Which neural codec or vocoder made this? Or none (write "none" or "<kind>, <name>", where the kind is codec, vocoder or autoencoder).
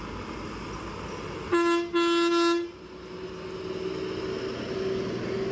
none